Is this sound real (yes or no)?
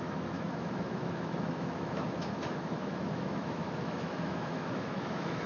no